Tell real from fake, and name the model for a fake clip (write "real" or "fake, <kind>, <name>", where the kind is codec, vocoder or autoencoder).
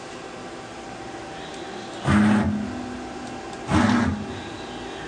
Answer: real